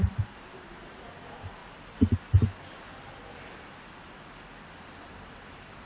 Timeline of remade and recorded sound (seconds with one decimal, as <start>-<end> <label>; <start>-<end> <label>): 0.0-1.6 remade; 1.6-5.1 recorded; 5.1-5.9 remade